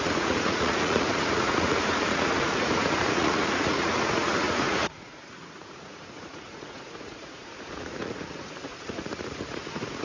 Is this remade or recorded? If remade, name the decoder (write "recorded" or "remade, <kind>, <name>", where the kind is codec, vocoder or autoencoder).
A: remade, vocoder, Vocos